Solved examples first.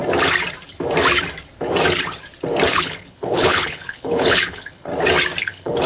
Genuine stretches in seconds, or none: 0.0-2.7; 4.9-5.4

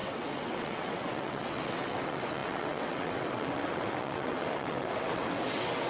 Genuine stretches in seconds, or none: none

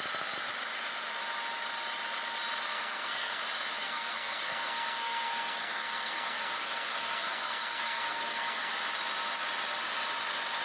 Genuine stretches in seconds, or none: 0.0-2.7; 3.4-3.8; 8.7-10.6